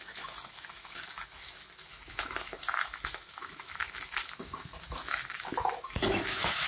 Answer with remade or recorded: remade